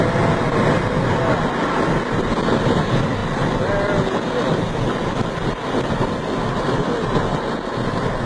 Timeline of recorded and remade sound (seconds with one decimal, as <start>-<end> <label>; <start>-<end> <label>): 0.0-8.3 recorded